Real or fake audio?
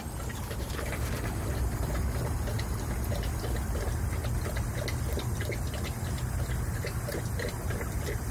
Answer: real